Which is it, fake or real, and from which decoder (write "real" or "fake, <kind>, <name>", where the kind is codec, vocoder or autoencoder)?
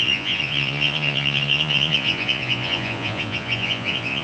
fake, vocoder, Vocos